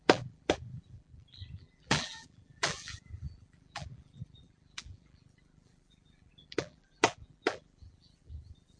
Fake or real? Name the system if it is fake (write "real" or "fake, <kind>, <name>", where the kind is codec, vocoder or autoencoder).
fake, vocoder, BigVGAN v2